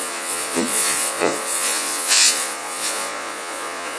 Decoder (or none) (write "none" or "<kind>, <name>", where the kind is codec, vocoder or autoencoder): vocoder, Vocos